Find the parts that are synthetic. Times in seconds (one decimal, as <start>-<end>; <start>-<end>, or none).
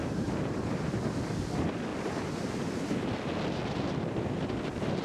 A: 0.0-0.6; 1.9-2.7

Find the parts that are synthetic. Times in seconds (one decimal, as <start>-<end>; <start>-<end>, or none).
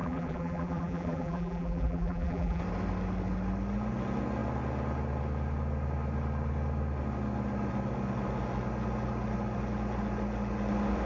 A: 0.0-2.6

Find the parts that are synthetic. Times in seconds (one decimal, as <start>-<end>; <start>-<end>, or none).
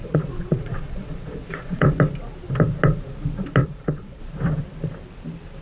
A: 0.0-2.0; 3.6-4.2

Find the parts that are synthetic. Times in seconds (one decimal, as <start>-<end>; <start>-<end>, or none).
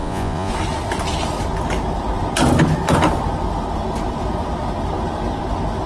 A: 0.0-0.5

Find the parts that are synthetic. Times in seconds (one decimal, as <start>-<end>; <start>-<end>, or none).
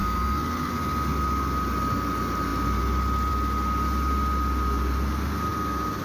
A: 0.0-0.7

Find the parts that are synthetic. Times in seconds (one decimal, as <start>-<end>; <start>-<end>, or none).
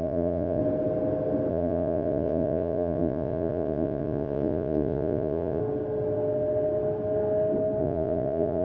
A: 0.0-0.6; 1.5-5.6; 7.8-8.6